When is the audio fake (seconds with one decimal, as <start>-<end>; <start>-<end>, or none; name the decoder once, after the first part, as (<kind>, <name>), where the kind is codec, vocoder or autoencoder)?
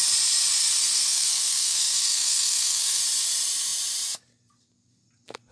0.5-3.0 (codec, SNAC)